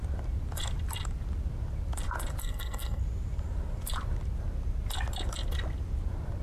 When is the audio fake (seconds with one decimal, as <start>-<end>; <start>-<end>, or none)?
2.4-3.0